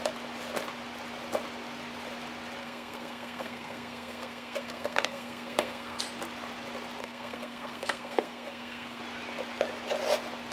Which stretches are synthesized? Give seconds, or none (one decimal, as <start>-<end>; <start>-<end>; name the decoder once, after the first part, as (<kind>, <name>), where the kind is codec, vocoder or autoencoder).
2.6-6.0 (codec, SNAC); 7.0-9.0

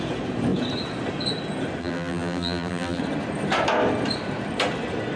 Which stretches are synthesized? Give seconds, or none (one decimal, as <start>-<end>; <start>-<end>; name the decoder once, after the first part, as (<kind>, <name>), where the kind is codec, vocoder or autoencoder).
1.8-3.0 (vocoder, BigVGAN v2)

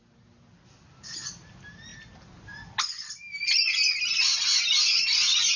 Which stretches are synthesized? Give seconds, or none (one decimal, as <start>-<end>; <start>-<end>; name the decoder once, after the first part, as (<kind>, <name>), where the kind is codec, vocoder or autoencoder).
none

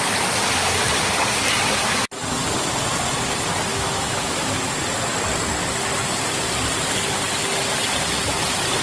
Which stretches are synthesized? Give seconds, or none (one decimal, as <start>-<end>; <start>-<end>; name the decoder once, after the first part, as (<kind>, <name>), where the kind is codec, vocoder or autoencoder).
3.7-4.7 (autoencoder, DAC-VAE)

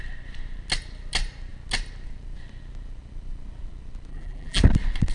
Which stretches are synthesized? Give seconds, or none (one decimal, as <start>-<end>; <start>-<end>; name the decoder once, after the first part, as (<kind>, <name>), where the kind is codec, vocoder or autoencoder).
4.1-4.6 (vocoder, BigVGAN v2)